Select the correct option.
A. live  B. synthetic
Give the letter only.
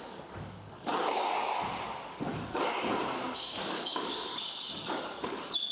B